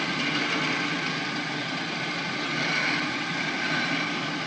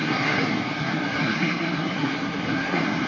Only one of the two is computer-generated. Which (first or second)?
second